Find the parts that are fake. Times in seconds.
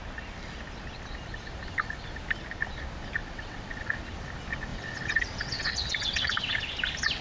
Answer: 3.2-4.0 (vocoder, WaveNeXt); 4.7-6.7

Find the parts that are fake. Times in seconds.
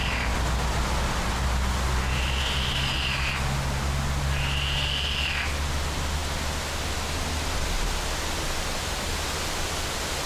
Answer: none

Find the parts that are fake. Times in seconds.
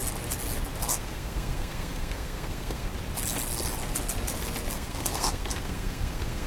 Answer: 0.9-2.9 (codec, SNAC); 4.7-6.5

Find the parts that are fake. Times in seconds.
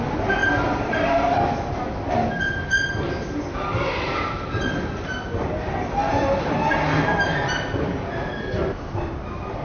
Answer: none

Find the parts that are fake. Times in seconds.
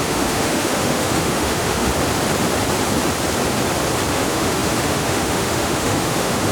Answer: 0.0-1.9 (autoencoder, DAC-VAE); 4.1-6.5